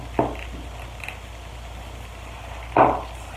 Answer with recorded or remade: recorded